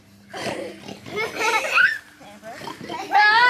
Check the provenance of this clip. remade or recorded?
recorded